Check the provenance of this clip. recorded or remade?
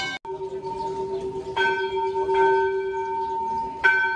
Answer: recorded